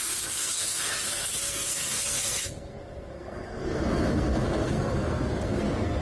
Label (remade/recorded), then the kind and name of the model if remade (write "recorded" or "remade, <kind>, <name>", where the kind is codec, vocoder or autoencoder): remade, codec, SNAC